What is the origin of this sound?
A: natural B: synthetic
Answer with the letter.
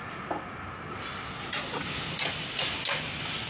A